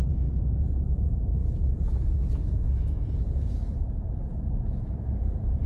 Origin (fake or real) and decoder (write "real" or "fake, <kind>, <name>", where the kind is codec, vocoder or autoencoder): fake, vocoder, Vocos